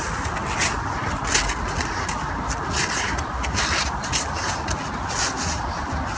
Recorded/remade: recorded